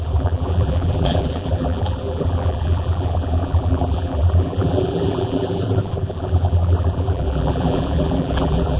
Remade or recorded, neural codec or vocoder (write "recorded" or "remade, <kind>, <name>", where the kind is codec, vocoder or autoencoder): remade, vocoder, BigVGAN v2